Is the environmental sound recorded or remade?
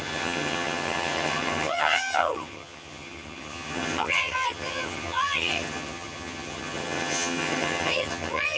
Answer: remade